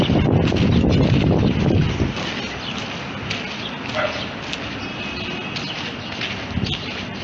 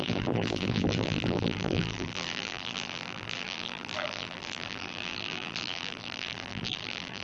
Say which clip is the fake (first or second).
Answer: second